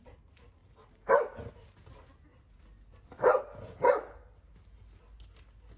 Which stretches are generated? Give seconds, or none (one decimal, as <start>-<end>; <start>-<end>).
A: none